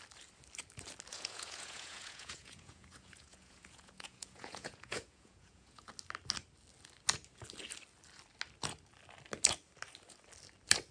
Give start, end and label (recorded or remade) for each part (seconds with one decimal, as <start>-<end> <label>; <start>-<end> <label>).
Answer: 0.0-1.1 recorded; 1.1-5.9 remade; 5.9-10.9 recorded